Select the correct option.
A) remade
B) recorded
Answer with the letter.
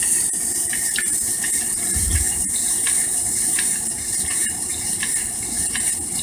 A